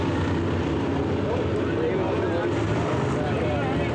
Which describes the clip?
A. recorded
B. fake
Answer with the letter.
A